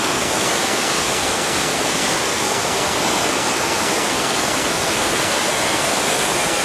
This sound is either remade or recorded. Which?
remade